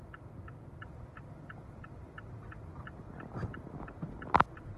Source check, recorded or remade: recorded